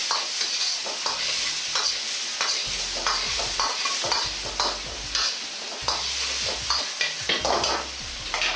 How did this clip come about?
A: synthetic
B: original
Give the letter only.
B